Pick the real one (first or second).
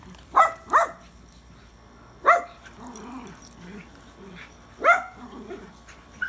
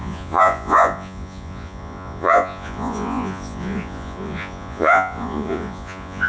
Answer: first